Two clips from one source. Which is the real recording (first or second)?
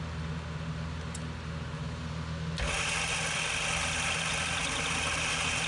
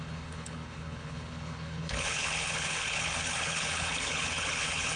first